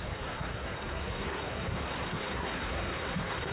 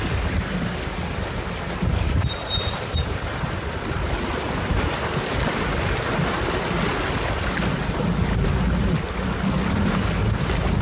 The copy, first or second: first